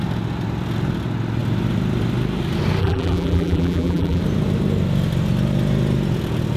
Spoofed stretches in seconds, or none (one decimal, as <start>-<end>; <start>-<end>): 2.8-4.2